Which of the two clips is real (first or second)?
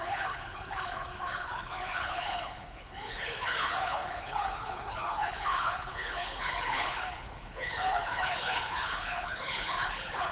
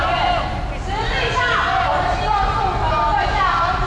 second